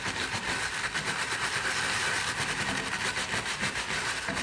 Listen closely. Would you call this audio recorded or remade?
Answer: recorded